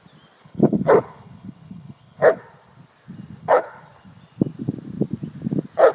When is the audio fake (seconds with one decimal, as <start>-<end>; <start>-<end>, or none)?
0.4-2.4; 3.4-3.9